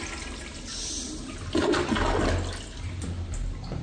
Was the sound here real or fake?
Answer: real